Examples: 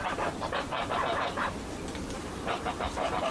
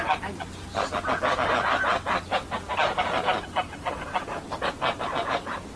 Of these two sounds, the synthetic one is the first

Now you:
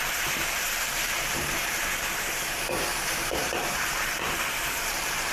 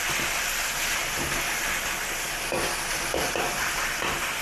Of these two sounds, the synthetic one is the first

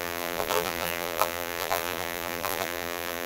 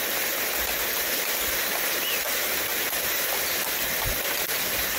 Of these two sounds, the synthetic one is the first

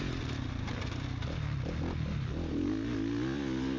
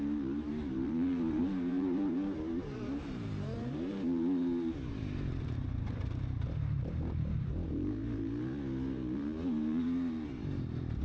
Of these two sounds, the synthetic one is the second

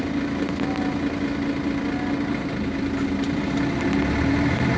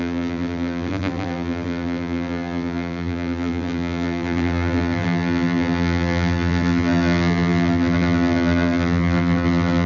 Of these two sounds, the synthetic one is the second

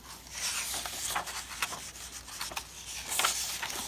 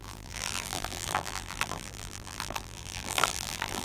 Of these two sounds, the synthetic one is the second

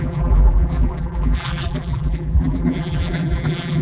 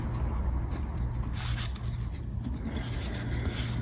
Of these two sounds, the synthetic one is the first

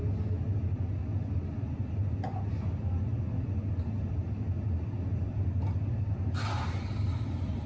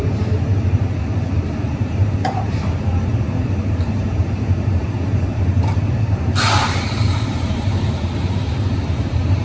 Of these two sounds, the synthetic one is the second